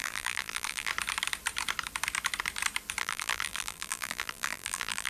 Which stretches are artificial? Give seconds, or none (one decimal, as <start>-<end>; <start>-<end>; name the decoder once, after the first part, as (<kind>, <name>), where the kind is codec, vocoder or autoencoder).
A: 0.0-0.9 (vocoder, BigVGAN v2); 3.0-5.1